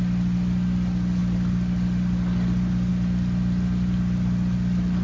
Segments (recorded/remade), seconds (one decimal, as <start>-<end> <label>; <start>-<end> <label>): 0.0-5.0 recorded